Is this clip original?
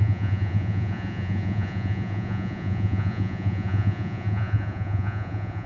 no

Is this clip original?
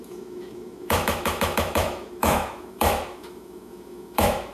no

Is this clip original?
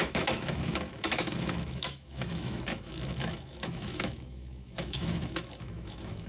no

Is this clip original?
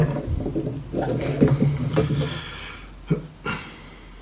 yes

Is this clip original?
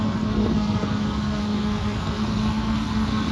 no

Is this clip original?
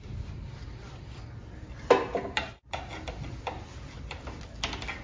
yes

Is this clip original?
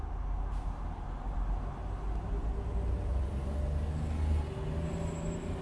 yes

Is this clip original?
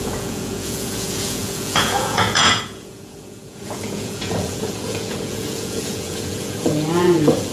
no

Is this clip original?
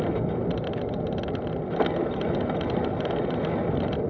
yes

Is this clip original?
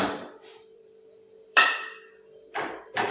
no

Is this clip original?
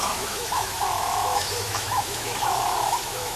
no